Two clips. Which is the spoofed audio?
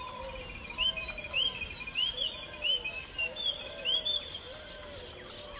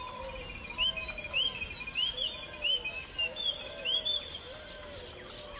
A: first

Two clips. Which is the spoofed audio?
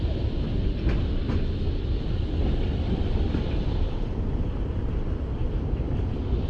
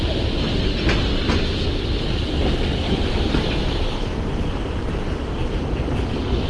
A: first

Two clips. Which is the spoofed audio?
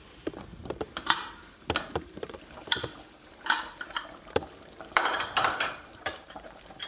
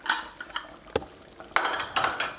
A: first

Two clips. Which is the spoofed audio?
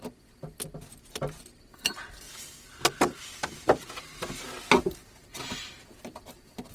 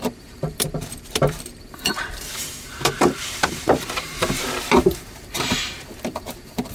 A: second